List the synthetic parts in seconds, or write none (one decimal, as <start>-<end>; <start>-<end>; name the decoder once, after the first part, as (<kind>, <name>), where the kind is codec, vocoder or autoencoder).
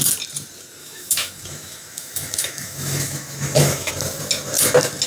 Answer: 0.8-3.9 (autoencoder, DAC-VAE)